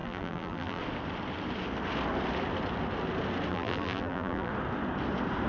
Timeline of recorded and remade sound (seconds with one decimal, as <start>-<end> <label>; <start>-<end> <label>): 0.0-0.8 remade; 0.8-3.5 recorded; 3.5-4.5 remade; 4.5-5.5 recorded